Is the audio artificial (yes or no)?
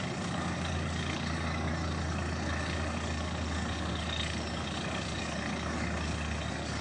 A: yes